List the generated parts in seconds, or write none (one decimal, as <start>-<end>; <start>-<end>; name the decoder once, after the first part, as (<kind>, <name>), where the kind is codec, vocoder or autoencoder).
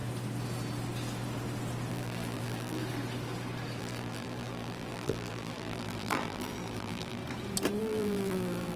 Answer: 1.9-2.8 (vocoder, BigVGAN v2); 3.8-7.2; 7.8-8.8